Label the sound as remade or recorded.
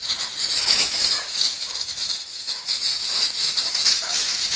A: remade